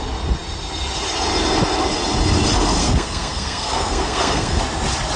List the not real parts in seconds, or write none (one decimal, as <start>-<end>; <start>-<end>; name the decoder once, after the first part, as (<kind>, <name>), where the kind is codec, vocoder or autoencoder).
2.8-4.6 (codec, SNAC)